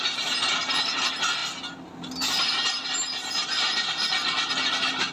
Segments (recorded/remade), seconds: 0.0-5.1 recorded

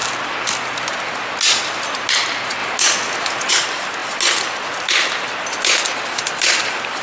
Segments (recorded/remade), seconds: 0.0-7.0 recorded

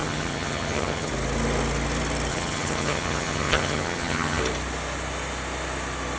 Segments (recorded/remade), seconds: 0.0-1.1 remade; 1.1-2.3 recorded; 2.3-4.4 remade; 4.4-6.2 recorded

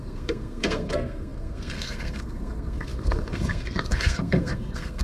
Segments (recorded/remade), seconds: 0.0-5.0 remade

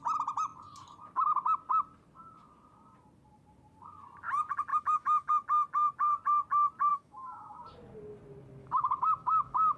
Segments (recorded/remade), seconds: 0.0-4.7 recorded; 4.7-5.3 remade; 5.3-6.9 recorded; 6.9-7.6 remade; 7.6-8.6 recorded; 8.6-9.8 remade